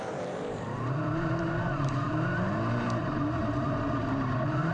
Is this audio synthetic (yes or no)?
yes